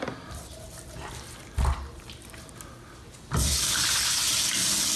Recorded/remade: recorded